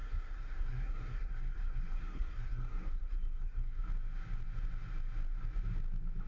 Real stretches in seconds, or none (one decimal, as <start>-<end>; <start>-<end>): 3.8-6.3